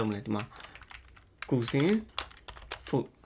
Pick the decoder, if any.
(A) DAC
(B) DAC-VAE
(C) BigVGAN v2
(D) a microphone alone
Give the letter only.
D